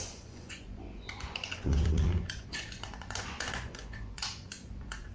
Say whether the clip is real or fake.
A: fake